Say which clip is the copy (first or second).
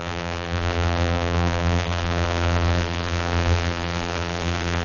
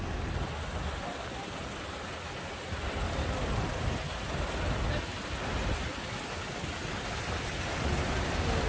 first